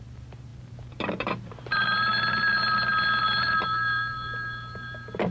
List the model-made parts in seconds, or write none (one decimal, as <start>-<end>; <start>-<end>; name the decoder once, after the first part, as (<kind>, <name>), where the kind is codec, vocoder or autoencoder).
0.0-2.1 (vocoder, BigVGAN v2); 3.2-5.3